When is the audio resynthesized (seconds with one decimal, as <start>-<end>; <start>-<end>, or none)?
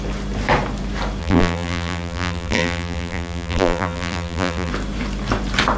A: 1.2-4.7